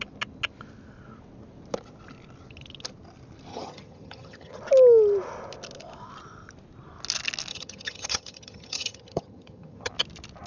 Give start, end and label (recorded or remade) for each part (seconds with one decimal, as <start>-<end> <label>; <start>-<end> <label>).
0.0-3.5 recorded; 3.5-4.6 remade; 4.6-7.5 recorded; 7.5-9.9 remade; 9.9-10.5 recorded